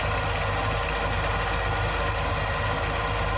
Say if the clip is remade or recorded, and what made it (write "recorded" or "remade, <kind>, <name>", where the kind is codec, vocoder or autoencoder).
recorded